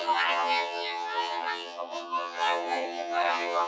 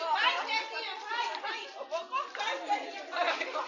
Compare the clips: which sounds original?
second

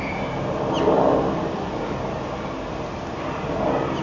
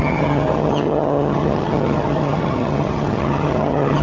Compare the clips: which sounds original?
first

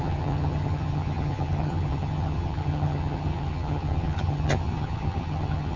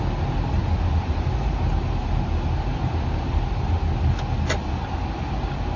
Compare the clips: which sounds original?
second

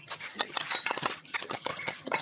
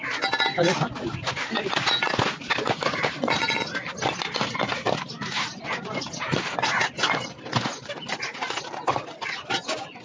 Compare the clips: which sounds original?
second